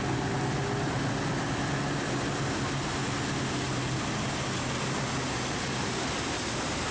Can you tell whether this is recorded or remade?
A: recorded